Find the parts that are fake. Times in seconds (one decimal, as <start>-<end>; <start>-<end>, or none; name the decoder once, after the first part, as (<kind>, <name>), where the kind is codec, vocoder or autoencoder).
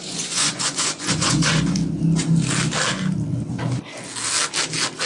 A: 0.0-1.8 (vocoder, Vocos)